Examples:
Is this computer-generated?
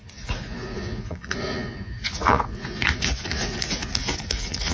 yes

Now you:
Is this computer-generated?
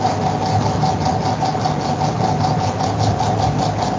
no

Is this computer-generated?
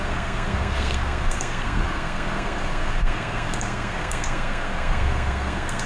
yes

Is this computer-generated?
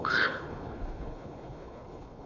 yes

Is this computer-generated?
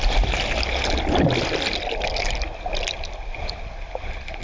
no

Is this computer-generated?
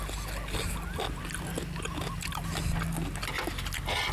no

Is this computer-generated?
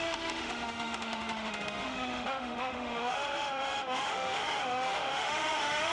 yes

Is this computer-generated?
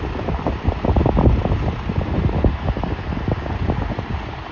no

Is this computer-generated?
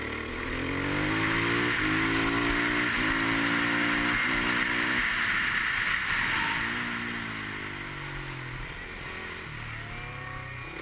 no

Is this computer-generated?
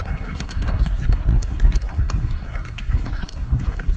yes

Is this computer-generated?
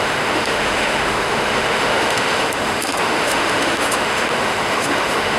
yes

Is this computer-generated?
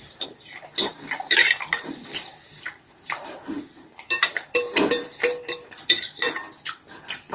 yes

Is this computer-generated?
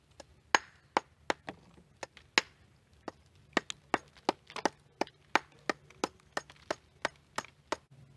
no